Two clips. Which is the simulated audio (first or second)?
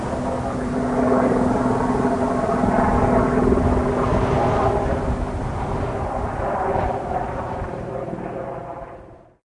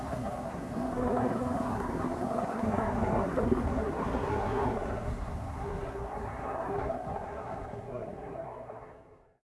second